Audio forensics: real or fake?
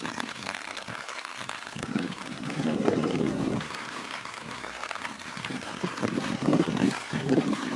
fake